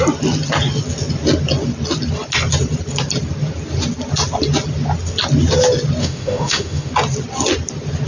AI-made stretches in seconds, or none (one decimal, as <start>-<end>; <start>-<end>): 6.0-6.9

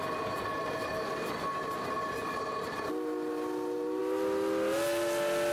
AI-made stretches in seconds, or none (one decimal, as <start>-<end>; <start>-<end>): none

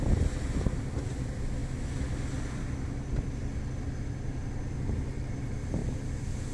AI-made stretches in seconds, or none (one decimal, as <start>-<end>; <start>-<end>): none

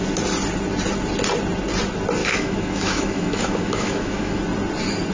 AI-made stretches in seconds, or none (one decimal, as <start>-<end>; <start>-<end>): 2.2-4.4

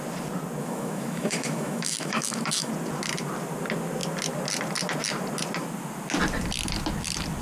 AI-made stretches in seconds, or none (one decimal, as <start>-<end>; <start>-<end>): 0.6-2.7

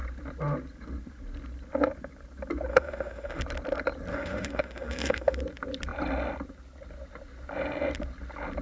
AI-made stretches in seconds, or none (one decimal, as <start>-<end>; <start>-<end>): 2.7-3.4; 4.1-5.4